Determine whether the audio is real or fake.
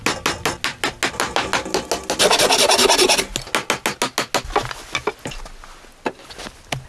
real